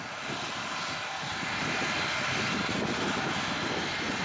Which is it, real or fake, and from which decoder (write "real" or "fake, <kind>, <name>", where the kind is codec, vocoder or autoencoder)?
real